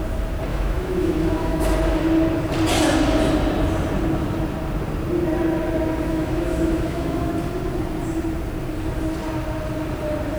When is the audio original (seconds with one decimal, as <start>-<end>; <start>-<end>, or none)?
0.0-0.5; 1.6-6.1; 7.3-10.4